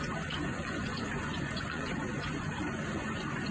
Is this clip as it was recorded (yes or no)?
no